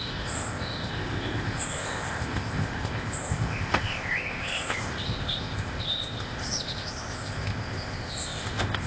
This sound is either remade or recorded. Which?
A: remade